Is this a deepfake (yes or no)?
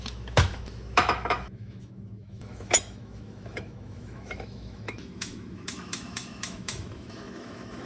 yes